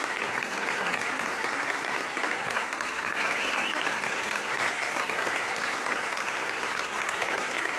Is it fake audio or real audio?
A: fake